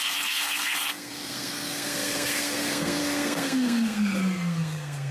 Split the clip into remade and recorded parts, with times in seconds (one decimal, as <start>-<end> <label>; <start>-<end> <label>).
0.0-5.1 remade